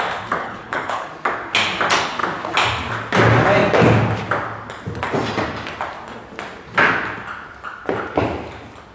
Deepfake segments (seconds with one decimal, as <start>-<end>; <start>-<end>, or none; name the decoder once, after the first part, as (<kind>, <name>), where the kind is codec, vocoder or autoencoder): 0.4-1.1 (codec, HILCodec)